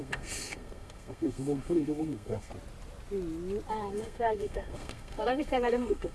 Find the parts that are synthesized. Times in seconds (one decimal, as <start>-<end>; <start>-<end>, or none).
0.0-2.5; 3.7-6.1